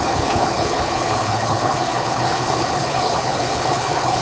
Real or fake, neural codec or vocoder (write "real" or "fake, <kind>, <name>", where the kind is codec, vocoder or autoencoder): fake, codec, HILCodec